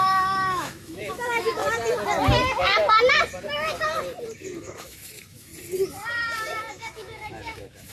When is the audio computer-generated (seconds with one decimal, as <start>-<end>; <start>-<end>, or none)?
0.0-1.6; 4.6-5.5; 6.1-7.9